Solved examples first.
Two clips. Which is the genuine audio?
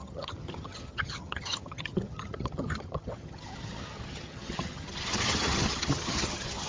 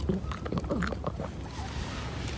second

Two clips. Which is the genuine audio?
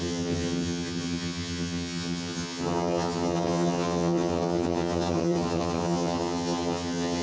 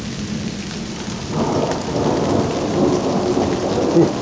second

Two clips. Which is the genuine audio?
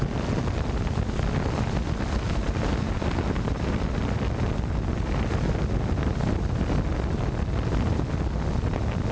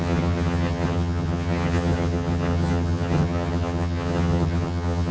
first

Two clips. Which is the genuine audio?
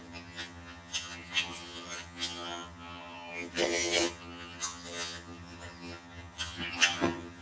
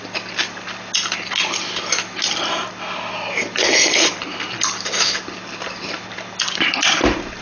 second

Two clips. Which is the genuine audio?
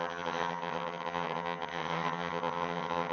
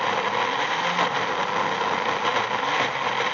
second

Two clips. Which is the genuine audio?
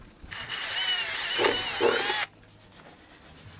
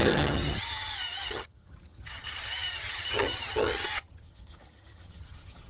first